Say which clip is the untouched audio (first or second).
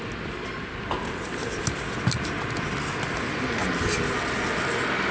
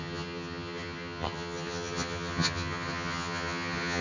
first